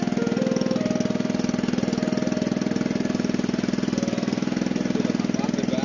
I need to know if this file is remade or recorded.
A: recorded